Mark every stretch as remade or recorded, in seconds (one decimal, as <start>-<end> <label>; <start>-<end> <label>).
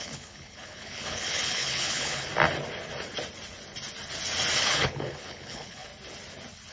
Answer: 0.0-2.3 remade; 2.3-4.6 recorded; 4.6-5.9 remade; 5.9-6.7 recorded